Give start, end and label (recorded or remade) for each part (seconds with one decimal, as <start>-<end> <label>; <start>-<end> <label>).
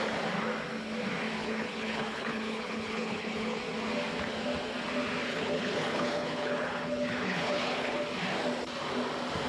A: 0.0-1.4 recorded; 1.4-3.6 remade; 3.6-5.3 recorded; 5.3-8.0 remade; 8.0-9.5 recorded